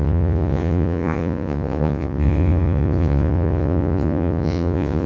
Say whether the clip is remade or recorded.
remade